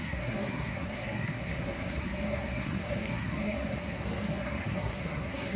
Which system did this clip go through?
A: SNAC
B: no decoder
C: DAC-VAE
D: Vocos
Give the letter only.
A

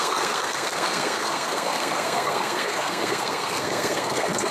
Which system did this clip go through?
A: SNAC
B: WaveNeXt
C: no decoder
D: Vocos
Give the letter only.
A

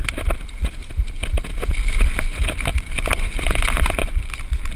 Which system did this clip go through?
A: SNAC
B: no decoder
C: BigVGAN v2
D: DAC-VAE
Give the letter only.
B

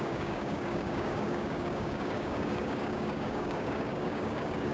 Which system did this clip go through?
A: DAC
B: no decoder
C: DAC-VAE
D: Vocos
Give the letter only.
A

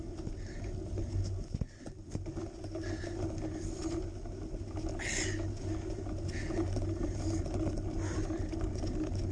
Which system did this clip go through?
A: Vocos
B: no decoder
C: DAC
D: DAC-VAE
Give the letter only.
B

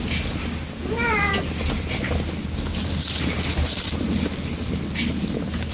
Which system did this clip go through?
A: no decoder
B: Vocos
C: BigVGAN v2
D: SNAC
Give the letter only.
A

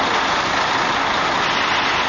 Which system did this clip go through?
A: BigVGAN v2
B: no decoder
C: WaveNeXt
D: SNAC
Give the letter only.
B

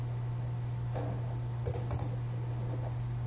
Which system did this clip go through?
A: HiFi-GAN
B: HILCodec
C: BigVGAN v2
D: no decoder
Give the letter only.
D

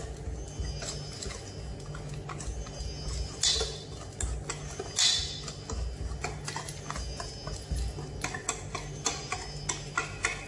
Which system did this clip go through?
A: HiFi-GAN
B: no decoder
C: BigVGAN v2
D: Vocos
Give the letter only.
B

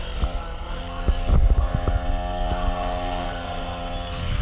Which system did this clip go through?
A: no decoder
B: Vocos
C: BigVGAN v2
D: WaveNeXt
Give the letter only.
A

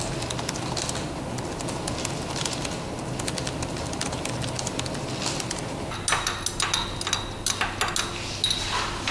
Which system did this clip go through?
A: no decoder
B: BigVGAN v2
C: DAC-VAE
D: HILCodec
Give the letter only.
A